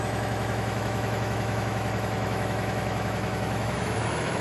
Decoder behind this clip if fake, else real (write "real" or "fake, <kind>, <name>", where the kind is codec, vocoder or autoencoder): fake, autoencoder, DAC-VAE